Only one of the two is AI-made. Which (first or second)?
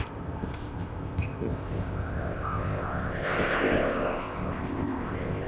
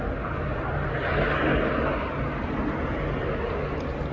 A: first